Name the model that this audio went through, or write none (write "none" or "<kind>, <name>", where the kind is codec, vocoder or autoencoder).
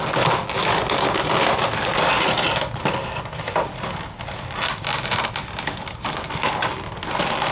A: none